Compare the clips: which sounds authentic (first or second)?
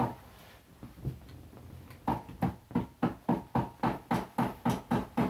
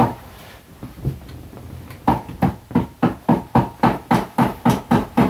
first